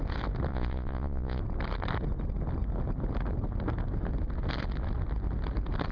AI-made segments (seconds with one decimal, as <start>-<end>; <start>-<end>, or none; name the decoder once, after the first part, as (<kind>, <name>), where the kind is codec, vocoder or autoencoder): 0.5-1.4 (vocoder, Vocos)